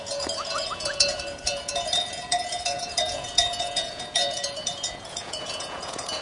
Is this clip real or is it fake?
fake